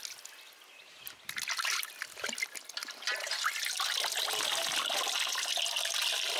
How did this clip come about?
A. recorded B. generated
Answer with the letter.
A